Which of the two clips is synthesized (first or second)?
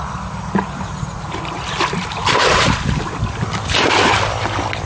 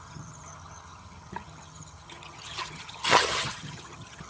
second